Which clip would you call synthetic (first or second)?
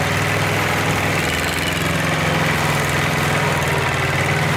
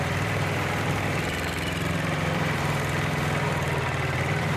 second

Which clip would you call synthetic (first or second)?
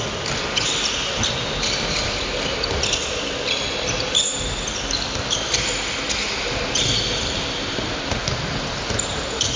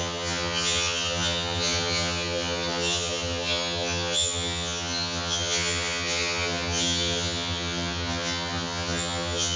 second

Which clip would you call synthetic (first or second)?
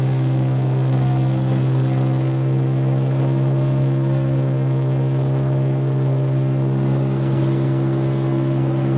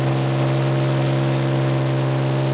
first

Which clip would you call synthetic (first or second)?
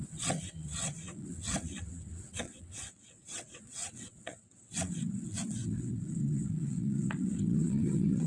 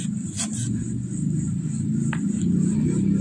first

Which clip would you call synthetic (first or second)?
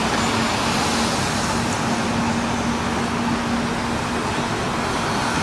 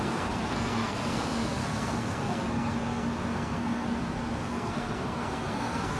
second